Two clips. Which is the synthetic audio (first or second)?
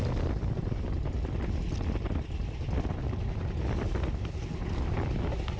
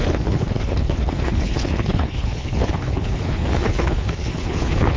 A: second